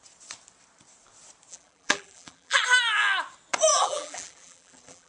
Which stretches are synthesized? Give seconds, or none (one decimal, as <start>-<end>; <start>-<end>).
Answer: 1.5-2.6; 3.7-5.1

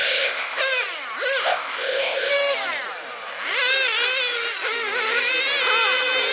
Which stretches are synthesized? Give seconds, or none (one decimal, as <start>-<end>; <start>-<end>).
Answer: 0.0-0.6; 1.4-2.3

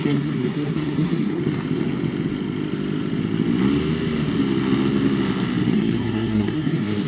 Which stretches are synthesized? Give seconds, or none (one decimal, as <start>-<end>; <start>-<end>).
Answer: 0.0-1.4; 5.7-7.1

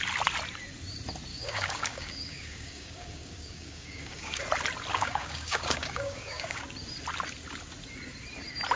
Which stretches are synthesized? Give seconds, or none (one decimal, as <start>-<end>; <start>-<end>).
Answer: 1.3-4.4; 4.9-6.6

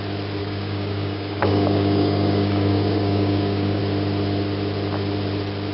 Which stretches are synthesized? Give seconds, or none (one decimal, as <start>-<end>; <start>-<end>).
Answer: 0.4-3.8

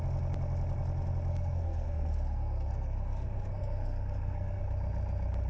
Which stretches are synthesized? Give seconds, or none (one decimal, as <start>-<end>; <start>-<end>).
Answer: 1.3-4.6

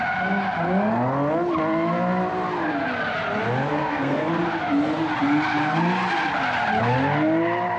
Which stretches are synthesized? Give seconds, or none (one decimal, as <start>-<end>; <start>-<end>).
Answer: 3.7-4.3

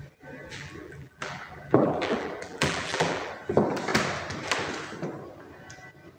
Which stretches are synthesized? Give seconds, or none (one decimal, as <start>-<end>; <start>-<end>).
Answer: 0.5-3.3